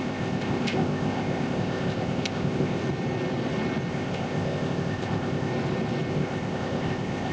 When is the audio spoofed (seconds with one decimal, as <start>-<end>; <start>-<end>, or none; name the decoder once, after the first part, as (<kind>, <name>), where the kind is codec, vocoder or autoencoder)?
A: 0.0-2.8 (codec, ZipCodec); 3.9-5.5; 6.1-7.3